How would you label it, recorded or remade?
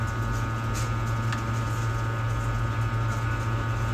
recorded